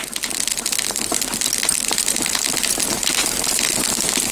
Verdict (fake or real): real